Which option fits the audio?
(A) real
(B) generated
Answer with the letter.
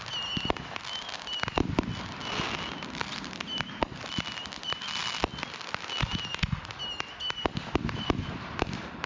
A